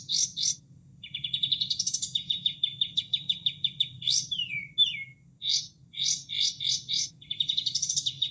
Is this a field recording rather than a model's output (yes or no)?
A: yes